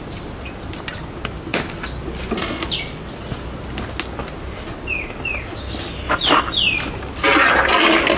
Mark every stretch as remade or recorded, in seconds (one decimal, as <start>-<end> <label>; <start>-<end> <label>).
0.0-8.2 recorded